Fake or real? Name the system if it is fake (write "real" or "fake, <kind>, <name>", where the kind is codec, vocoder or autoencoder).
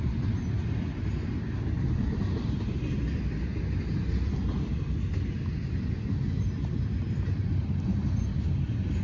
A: real